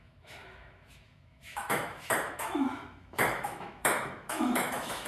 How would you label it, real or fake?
fake